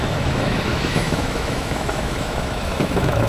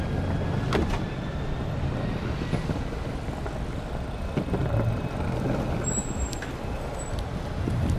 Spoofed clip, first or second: first